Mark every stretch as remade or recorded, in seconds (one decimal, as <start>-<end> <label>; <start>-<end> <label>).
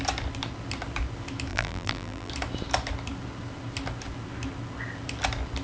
0.0-1.5 recorded; 1.5-2.3 remade; 2.3-5.6 recorded